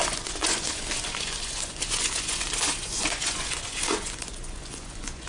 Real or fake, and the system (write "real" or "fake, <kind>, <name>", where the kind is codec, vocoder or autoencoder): fake, vocoder, Vocos